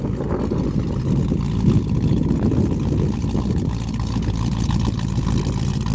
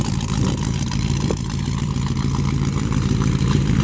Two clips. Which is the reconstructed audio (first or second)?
second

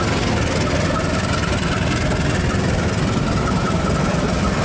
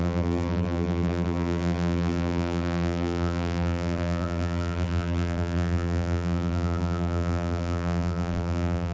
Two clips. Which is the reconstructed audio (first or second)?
second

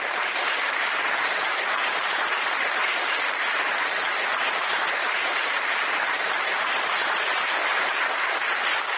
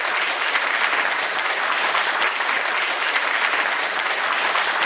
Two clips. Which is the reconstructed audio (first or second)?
first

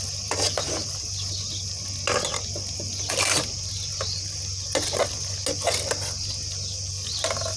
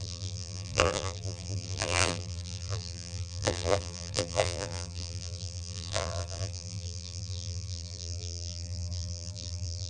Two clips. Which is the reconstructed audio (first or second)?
second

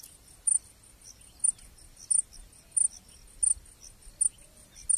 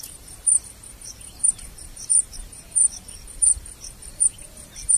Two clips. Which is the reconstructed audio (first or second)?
second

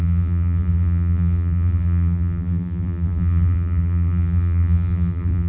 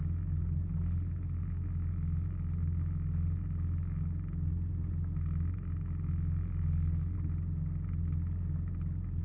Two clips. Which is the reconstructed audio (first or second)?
first